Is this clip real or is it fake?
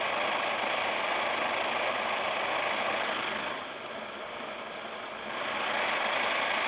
real